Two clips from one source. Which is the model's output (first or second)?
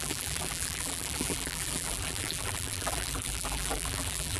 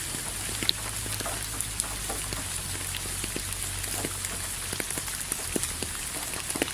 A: first